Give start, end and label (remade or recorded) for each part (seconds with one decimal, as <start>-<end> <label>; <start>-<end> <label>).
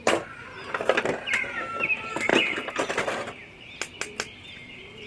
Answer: 0.0-2.3 recorded; 2.3-2.9 remade; 2.9-5.1 recorded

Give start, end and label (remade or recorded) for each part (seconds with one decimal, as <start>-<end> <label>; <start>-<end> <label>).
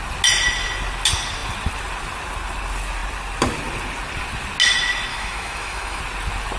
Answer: 0.0-5.1 recorded; 5.1-6.0 remade; 6.0-6.6 recorded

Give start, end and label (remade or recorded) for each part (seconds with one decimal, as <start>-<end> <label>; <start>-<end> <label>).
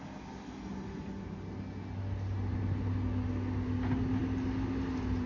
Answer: 0.0-5.3 recorded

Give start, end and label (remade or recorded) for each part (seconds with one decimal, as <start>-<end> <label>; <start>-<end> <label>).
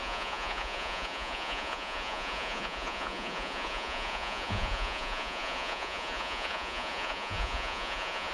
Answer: 0.0-8.3 remade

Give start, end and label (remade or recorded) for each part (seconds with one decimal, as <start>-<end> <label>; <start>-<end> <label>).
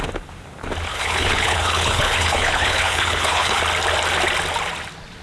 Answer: 0.0-0.9 recorded; 0.9-3.6 remade; 3.6-5.2 recorded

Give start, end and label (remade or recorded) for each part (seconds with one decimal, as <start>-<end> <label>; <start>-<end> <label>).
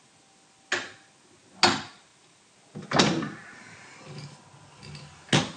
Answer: 0.0-5.6 recorded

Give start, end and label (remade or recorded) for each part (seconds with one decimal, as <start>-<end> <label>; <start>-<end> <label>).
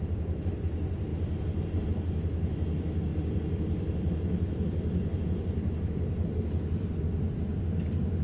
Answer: 0.0-8.2 remade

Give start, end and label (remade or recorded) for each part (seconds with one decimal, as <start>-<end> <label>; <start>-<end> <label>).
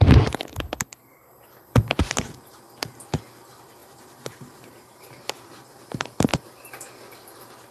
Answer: 0.0-1.1 recorded; 1.1-2.6 remade; 2.6-3.8 recorded; 3.8-6.3 remade; 6.3-7.7 recorded